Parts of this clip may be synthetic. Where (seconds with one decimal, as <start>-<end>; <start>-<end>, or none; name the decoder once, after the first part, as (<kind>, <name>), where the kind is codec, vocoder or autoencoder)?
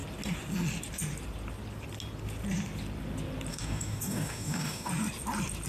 3.5-4.9 (codec, DAC)